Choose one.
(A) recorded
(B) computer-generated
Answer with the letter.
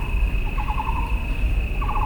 A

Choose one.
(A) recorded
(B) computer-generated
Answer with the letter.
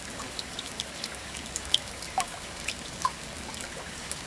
B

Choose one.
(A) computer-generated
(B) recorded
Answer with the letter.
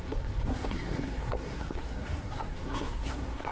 A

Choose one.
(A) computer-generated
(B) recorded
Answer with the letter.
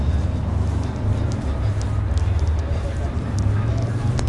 B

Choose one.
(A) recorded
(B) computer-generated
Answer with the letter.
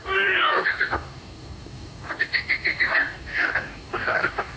B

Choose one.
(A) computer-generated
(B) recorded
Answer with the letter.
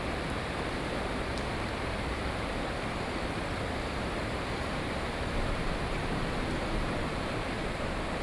A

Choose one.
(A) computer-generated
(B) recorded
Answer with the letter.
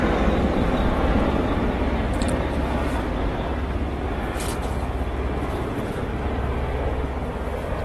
B